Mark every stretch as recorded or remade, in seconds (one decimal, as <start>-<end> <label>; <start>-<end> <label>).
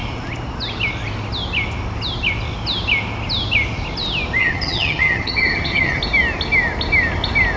0.0-4.4 recorded; 4.4-6.0 remade; 6.0-7.6 recorded